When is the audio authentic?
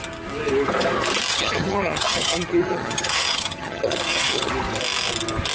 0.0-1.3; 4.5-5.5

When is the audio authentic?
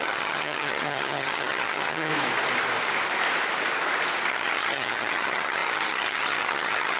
2.1-4.3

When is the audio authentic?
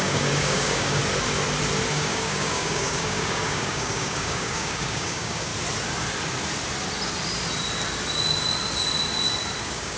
1.0-1.9; 5.5-9.6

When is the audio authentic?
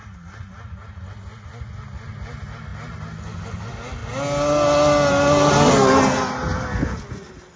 0.0-7.6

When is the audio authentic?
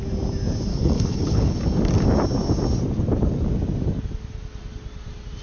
0.0-0.7; 1.6-5.4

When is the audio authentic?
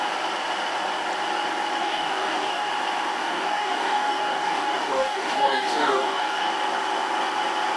0.0-1.8; 2.7-3.2; 6.5-7.8